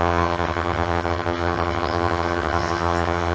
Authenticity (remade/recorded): remade